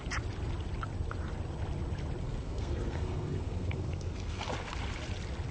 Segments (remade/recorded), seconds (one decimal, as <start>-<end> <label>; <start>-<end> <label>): 0.0-2.2 recorded; 2.2-4.5 remade; 4.5-5.5 recorded